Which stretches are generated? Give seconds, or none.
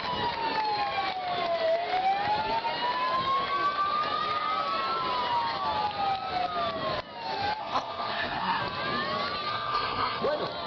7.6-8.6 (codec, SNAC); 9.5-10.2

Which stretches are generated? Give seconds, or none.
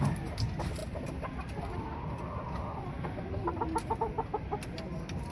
none